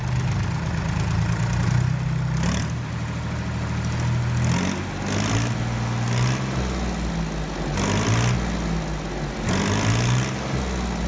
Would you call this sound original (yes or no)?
yes